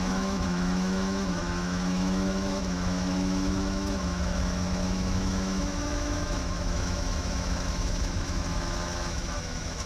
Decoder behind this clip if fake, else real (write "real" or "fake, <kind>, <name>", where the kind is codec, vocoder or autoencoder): fake, autoencoder, DAC-VAE